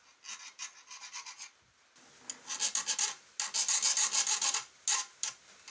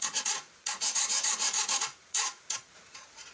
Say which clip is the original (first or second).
first